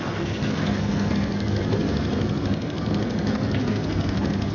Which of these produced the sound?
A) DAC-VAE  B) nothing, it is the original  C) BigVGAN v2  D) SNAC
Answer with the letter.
D